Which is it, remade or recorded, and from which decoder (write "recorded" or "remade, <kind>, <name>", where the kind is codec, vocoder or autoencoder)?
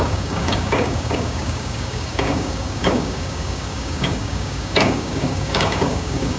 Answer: remade, codec, DAC